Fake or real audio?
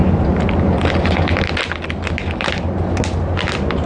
real